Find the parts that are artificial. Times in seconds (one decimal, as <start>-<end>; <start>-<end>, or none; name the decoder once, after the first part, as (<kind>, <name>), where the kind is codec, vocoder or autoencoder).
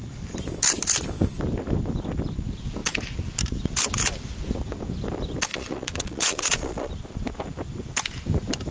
5.5-6.9 (vocoder, Vocos)